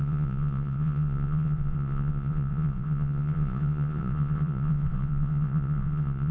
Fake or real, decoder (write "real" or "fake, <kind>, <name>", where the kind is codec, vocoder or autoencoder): fake, vocoder, Vocos